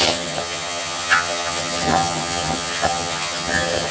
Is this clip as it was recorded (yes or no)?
no